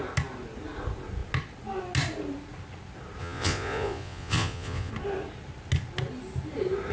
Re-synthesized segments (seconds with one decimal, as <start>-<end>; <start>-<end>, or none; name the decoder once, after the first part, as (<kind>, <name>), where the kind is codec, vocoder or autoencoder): 3.2-4.9 (vocoder, Vocos)